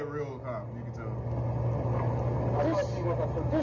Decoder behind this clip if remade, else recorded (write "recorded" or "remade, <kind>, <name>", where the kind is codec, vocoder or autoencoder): recorded